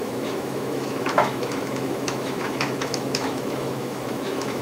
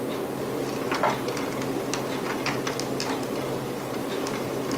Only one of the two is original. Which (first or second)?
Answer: second